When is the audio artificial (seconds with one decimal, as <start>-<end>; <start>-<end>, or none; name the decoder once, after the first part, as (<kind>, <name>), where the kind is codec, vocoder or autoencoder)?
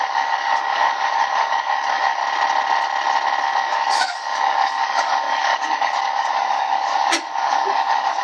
0.0-2.2 (codec, DAC); 3.4-8.2